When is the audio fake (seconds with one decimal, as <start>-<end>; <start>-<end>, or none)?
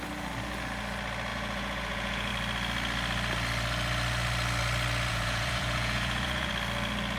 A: 1.3-2.3; 5.1-6.5